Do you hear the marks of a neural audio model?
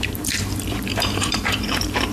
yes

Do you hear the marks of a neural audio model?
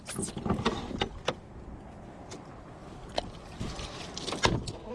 no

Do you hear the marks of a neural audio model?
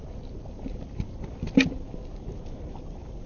no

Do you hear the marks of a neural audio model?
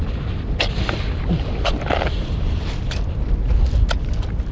no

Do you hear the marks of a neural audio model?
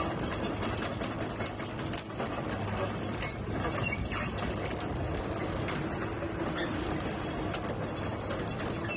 no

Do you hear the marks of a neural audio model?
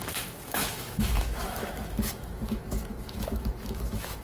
yes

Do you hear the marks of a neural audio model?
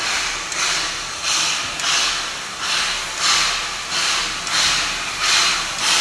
no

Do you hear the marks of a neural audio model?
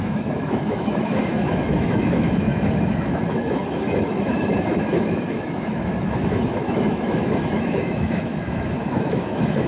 yes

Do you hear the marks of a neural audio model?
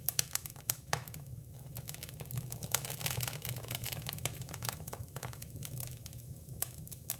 yes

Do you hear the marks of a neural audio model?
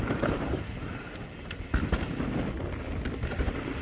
no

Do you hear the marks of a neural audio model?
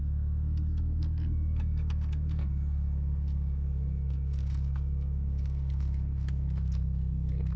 yes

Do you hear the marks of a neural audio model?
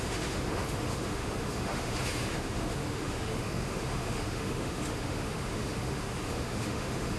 yes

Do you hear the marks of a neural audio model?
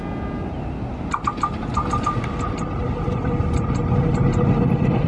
no